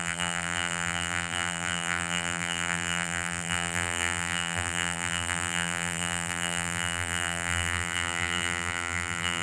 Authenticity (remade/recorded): remade